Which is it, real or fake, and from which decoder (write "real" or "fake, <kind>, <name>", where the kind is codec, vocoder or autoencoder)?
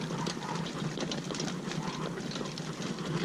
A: real